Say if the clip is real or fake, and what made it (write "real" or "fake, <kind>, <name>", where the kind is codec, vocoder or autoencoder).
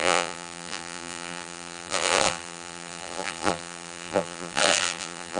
fake, vocoder, BigVGAN v2